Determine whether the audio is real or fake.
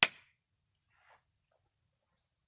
real